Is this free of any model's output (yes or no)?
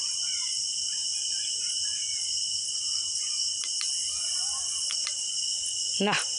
yes